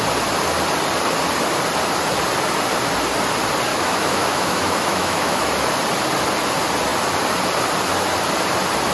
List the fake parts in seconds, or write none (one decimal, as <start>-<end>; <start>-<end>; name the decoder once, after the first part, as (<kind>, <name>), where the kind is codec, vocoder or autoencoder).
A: 3.7-5.5 (autoencoder, DAC-VAE)